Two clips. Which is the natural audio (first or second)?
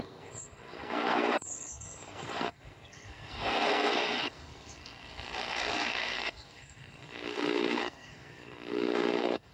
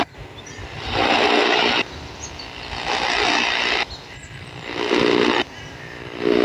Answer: second